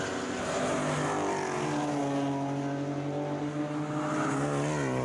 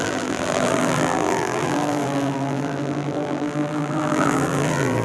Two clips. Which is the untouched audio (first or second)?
first